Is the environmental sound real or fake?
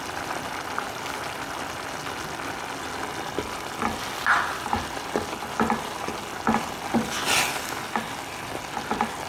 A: real